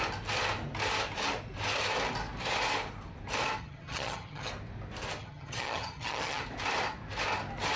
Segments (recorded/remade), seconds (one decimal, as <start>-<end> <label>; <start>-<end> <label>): 0.0-3.6 recorded; 3.6-4.5 remade; 4.5-5.2 recorded; 5.2-6.4 remade; 6.4-7.8 recorded